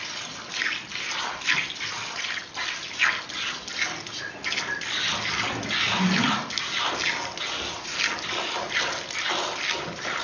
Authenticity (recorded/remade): recorded